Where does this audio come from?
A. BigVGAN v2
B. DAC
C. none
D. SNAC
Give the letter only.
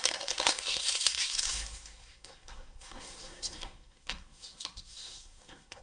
D